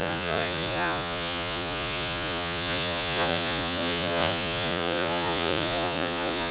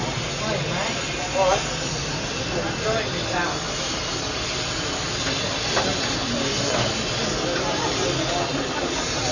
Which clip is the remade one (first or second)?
first